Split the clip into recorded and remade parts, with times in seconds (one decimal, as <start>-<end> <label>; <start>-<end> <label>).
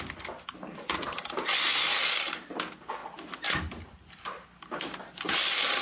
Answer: 0.0-5.8 recorded